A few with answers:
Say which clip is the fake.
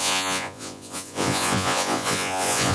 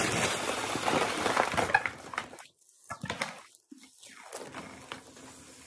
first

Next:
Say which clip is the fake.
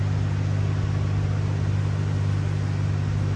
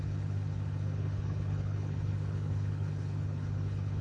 second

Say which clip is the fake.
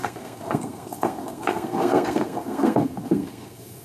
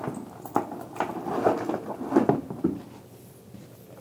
first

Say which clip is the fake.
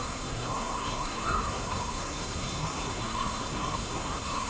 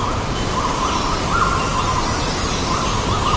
first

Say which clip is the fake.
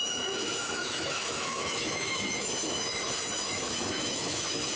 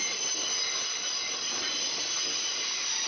first